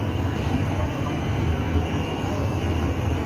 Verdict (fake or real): fake